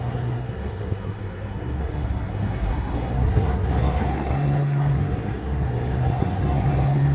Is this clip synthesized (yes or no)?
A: yes